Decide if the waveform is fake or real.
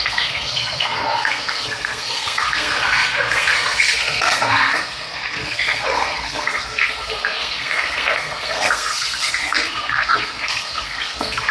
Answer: fake